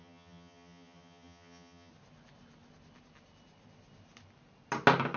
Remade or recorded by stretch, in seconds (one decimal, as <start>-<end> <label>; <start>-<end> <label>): 0.0-1.9 remade; 1.9-5.2 recorded